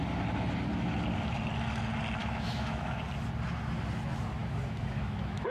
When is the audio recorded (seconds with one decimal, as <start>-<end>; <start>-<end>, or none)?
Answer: 0.0-2.2; 3.0-4.4